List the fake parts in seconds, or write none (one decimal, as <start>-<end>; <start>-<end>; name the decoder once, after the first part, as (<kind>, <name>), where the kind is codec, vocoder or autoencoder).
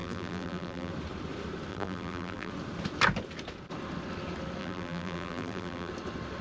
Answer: 0.0-0.9 (vocoder, BigVGAN v2); 1.7-2.5; 4.6-5.9